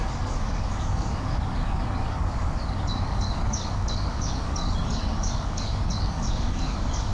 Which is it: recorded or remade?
remade